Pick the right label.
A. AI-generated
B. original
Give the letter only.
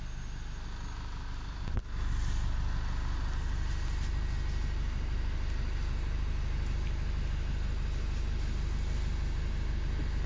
B